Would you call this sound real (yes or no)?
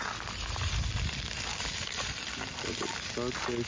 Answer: yes